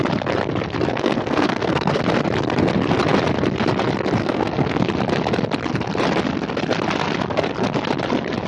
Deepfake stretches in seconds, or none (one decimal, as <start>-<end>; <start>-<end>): 0.9-2.0; 4.2-4.9